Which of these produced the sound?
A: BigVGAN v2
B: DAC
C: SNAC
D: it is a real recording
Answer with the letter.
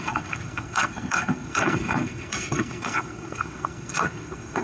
C